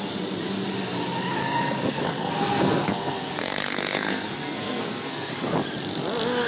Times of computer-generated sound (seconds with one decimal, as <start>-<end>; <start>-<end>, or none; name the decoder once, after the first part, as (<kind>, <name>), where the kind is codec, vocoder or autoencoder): 1.4-5.3 (codec, SNAC)

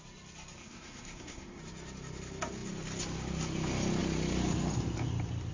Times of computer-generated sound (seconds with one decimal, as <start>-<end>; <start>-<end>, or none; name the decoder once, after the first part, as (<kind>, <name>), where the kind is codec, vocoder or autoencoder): 0.6-1.6 (codec, SNAC)

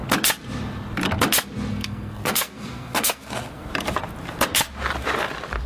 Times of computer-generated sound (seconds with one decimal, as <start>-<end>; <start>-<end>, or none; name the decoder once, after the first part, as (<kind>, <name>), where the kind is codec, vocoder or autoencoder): 1.7-3.7 (codec, SNAC)

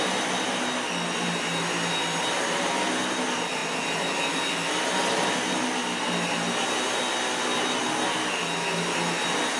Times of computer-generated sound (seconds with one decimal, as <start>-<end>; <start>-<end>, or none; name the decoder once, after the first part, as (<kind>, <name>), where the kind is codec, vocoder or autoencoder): none

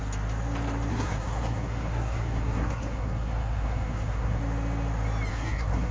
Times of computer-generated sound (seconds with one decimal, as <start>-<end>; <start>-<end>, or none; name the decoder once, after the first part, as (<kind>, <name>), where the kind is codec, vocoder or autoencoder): 0.9-4.4 (codec, SNAC); 5.3-5.9

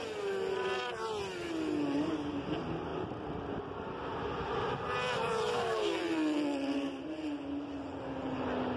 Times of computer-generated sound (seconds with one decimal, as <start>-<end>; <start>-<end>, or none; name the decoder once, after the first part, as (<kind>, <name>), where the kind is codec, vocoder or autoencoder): 5.5-6.0 (codec, SNAC)